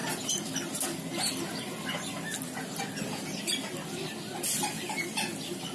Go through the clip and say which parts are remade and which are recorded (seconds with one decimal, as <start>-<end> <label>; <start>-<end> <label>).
0.0-5.7 recorded

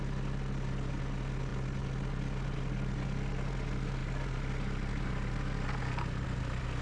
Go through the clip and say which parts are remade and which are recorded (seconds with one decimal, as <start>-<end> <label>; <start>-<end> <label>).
0.0-6.8 recorded

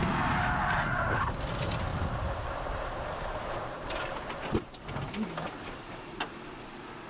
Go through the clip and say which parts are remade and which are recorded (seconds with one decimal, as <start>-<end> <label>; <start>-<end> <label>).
0.0-1.9 recorded; 1.9-4.4 remade; 4.4-7.1 recorded

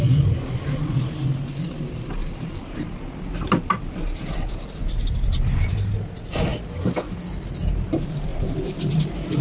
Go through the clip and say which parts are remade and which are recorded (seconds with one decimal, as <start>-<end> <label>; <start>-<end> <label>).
0.0-2.2 recorded; 2.2-5.6 remade; 5.6-8.3 recorded; 8.3-9.4 remade